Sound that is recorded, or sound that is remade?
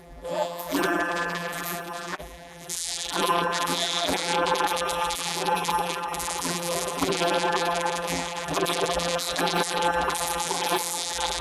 remade